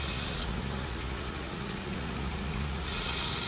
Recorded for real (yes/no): no